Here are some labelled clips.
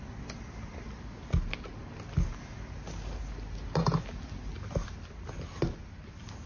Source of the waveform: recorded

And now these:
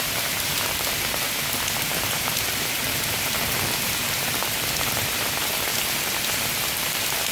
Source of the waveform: remade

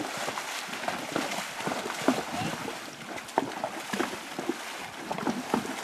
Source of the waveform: recorded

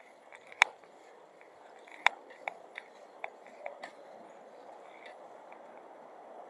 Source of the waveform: remade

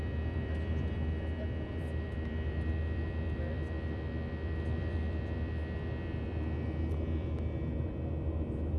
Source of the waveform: remade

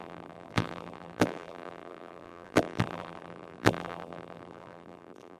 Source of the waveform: remade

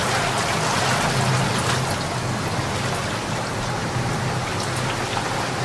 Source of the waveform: recorded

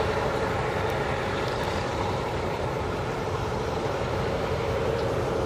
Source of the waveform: remade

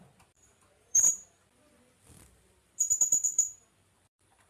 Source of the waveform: remade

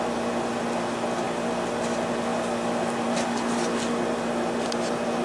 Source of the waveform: recorded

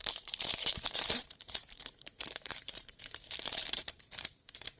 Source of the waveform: remade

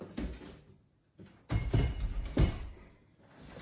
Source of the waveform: remade